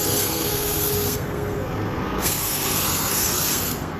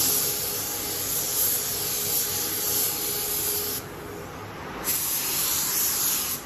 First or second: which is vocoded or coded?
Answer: first